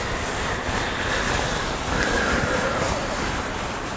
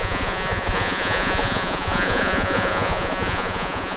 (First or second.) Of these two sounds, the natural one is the first